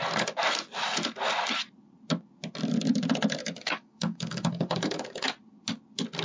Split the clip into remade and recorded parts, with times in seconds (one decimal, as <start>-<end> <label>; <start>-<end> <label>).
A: 0.0-3.4 recorded; 3.4-5.3 remade; 5.3-6.2 recorded